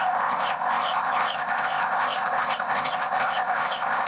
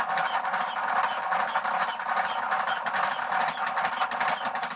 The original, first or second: second